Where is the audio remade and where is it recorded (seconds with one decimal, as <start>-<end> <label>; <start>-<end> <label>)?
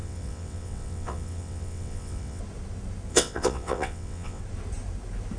0.0-2.4 remade; 2.4-3.1 recorded; 3.1-4.4 remade; 4.4-5.4 recorded